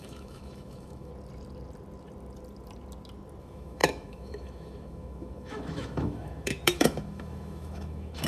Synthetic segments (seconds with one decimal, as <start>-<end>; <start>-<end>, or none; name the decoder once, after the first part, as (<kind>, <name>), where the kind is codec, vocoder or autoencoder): 0.0-1.1 (autoencoder, DAC-VAE); 3.4-8.3